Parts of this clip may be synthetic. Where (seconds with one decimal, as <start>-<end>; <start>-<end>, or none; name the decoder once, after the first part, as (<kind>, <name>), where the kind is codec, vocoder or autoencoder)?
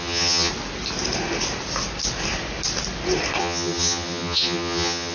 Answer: 0.0-0.5 (vocoder, HiFi-GAN); 3.4-5.1